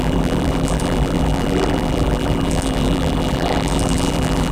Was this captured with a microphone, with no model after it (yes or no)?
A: no